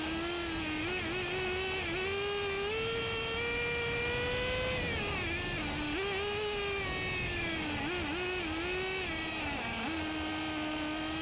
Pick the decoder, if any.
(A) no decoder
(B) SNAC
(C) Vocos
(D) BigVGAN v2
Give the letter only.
A